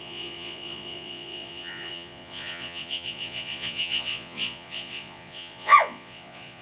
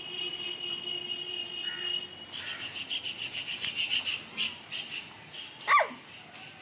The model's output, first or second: first